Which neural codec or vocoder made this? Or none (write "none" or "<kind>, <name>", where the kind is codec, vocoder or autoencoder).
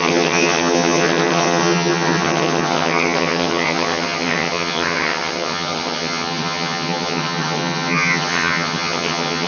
vocoder, HiFi-GAN